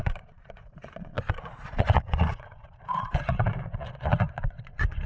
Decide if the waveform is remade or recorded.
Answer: remade